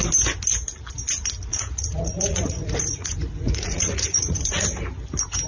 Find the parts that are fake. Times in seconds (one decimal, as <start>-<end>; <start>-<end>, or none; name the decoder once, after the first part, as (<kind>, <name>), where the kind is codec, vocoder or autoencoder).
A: 1.5-4.8 (vocoder, Vocos)

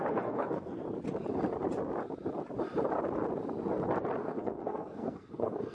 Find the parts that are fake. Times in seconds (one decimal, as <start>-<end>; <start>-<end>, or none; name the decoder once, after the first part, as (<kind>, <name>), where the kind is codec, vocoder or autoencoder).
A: 0.0-0.8 (codec, SNAC); 4.2-5.7

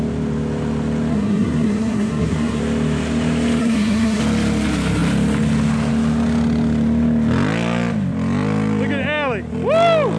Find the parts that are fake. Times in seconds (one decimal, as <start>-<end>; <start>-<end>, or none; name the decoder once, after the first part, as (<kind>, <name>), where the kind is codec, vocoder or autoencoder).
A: 1.1-2.6 (codec, SNAC); 3.6-4.2

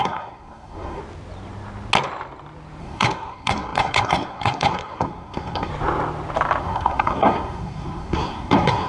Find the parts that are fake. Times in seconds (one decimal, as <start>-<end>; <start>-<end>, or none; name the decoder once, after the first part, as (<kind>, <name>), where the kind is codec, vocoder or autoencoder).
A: 0.0-1.0 (codec, SNAC); 2.8-5.7; 6.6-8.9

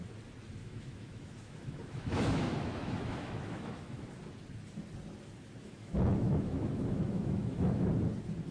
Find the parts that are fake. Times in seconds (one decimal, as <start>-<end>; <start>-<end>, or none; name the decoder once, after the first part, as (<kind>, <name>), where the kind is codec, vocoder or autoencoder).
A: 0.6-4.1 (autoencoder, DAC-VAE); 5.6-7.9

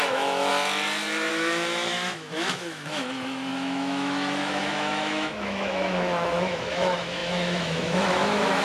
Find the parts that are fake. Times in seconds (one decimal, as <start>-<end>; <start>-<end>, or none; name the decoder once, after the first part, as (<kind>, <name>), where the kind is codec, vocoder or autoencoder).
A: 0.0-0.5 (autoencoder, DAC-VAE); 1.3-8.6

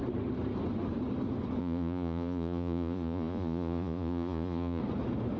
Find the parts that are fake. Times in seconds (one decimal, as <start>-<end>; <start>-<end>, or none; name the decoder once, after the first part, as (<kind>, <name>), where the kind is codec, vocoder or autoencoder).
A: 1.6-4.8 (vocoder, Vocos)

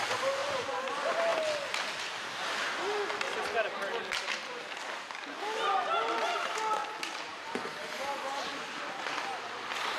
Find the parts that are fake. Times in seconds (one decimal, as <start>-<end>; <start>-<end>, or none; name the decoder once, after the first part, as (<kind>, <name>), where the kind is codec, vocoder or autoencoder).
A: 6.8-7.5 (vocoder, BigVGAN v2)